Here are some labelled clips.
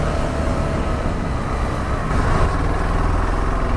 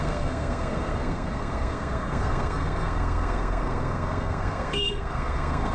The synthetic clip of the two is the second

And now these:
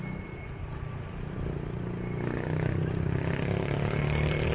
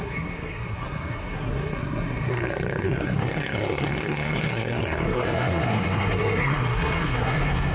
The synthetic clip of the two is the second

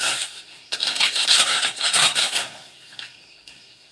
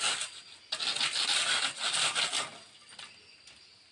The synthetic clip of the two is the first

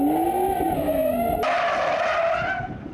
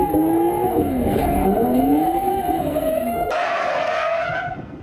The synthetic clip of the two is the second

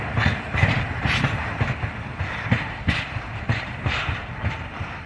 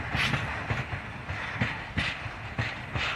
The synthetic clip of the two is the first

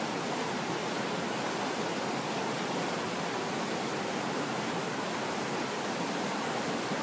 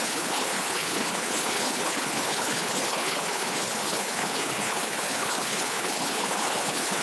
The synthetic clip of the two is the second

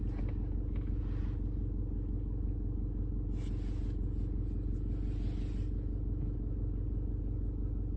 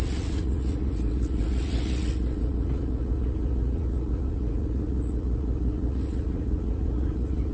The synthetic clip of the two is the second